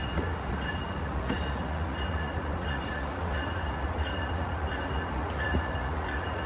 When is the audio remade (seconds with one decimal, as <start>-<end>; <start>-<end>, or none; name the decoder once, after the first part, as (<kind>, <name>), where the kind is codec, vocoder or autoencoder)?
0.0-6.5 (vocoder, Vocos)

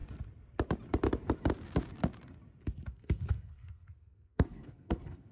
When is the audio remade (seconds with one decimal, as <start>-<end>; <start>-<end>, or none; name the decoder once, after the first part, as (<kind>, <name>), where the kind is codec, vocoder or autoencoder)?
2.9-5.3 (codec, SNAC)

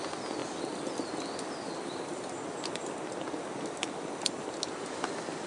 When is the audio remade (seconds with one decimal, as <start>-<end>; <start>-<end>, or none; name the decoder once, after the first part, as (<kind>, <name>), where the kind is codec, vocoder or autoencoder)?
none

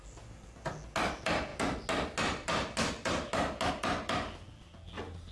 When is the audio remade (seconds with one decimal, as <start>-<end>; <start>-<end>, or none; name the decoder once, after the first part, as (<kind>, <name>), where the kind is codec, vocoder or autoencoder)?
none

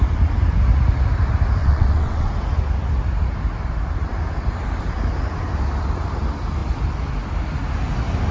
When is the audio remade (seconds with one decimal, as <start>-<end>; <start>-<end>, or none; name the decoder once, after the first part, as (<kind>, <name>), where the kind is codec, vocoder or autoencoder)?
1.6-2.3 (vocoder, WaveNeXt)

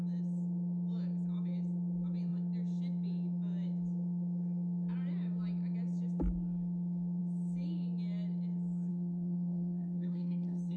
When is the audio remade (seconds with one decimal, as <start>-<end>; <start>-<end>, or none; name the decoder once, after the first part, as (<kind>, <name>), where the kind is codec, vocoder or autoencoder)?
8.9-10.8 (codec, SNAC)

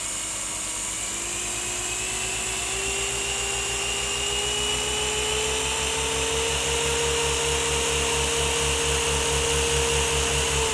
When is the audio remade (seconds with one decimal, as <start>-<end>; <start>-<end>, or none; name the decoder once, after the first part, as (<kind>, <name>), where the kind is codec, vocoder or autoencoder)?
none

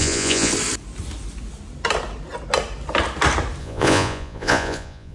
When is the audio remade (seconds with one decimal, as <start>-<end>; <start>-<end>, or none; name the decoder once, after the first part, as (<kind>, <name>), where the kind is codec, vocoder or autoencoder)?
0.0-0.5 (vocoder, Vocos); 3.6-5.1